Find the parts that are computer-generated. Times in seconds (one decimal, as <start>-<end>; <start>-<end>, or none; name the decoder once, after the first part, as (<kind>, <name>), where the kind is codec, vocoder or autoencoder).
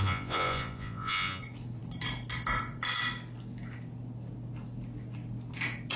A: 0.0-1.4 (vocoder, Vocos)